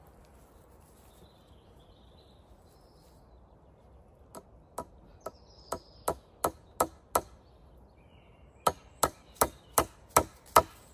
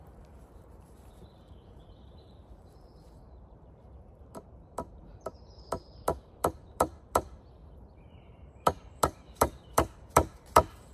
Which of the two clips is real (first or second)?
first